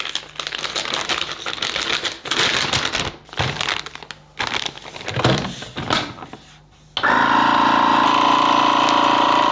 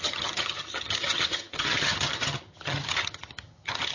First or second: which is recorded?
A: first